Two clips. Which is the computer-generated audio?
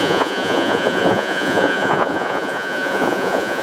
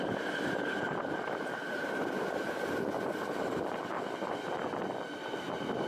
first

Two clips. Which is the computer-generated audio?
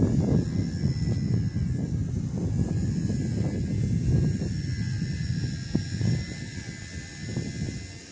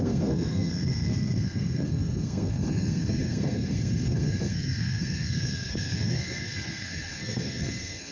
second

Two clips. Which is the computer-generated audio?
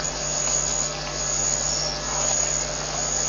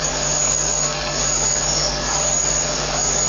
second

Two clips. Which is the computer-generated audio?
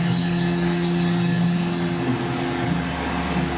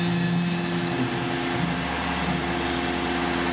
first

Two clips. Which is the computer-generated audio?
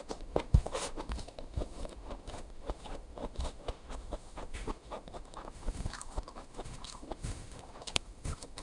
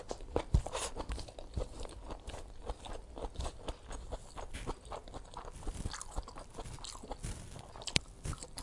first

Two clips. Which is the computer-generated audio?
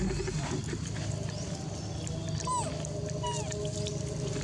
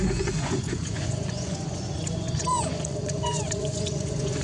second